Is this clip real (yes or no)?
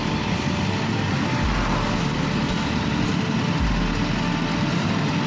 yes